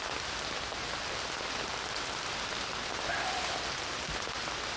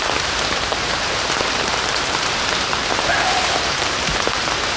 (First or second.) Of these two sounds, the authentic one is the first